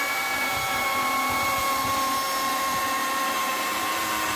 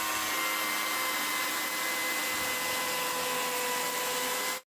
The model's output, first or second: first